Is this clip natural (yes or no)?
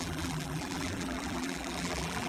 no